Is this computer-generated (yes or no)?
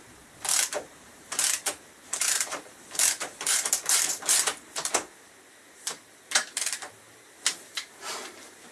yes